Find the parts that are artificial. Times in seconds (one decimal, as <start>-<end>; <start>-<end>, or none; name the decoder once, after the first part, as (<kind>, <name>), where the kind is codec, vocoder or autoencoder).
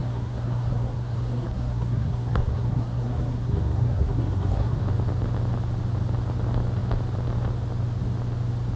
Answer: 0.0-4.8 (codec, SNAC)